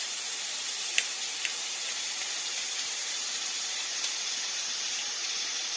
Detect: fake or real fake